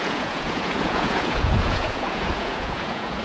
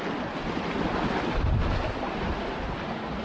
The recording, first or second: second